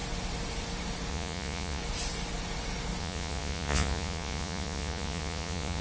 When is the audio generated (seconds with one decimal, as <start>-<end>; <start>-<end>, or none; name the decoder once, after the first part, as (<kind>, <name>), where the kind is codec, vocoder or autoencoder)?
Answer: 1.1-1.8 (vocoder, Vocos); 3.0-5.8